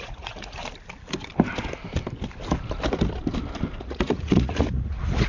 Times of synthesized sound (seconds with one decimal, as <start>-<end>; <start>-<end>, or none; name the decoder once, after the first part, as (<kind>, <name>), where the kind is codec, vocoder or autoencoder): 0.0-0.6 (vocoder, Vocos); 3.8-5.3